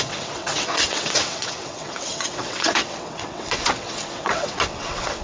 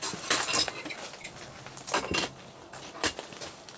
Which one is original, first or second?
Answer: second